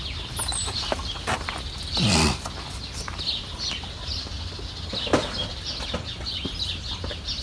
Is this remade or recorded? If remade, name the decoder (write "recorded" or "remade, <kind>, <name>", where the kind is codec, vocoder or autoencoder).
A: recorded